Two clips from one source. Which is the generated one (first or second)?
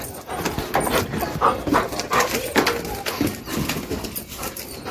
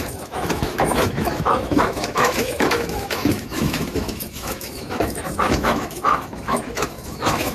second